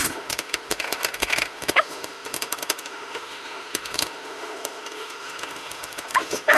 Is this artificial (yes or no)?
yes